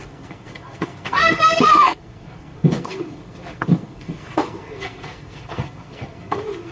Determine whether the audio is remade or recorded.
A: remade